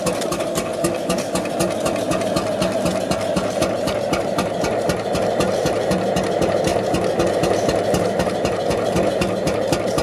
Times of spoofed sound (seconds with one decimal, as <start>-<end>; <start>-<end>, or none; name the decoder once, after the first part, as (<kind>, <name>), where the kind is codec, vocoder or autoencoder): 0.0-0.7 (vocoder, BigVGAN v2); 2.8-6.7; 7.3-10.0